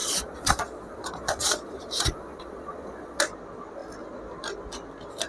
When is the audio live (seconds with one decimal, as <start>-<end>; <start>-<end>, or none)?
3.2-5.3